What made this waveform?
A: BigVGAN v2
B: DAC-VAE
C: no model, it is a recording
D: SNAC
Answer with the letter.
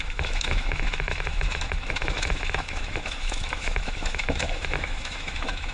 B